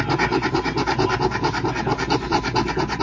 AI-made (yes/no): no